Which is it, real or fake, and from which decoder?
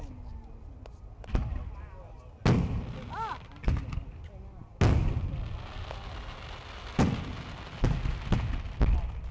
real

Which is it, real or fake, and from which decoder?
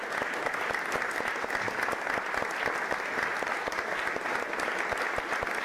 real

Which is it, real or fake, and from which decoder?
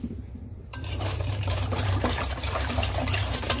fake, vocoder, BigVGAN v2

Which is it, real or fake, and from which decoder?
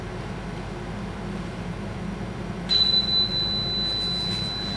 real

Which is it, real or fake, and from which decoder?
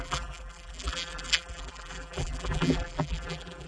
fake, vocoder, BigVGAN v2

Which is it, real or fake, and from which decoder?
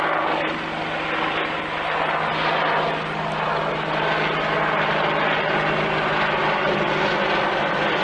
real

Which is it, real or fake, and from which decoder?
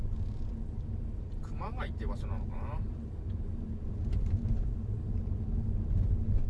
fake, vocoder, BigVGAN v2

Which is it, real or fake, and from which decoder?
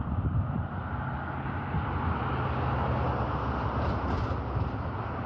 real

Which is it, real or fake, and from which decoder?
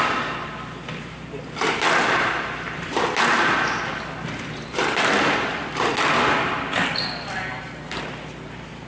real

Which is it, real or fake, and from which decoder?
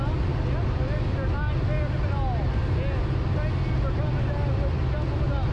real